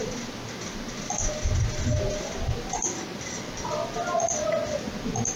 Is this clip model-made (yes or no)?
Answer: no